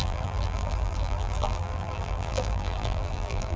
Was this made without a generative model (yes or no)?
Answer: no